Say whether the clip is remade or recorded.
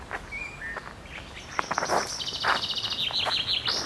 recorded